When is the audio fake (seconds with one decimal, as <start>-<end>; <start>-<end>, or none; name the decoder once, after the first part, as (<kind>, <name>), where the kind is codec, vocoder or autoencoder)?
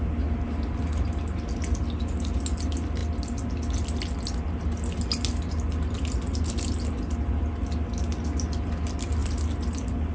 none